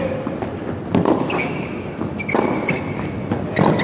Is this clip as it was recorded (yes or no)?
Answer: yes